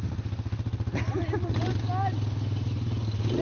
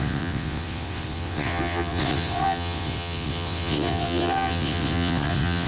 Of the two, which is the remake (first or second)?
second